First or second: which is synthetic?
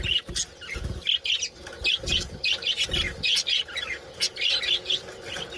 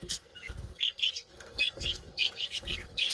second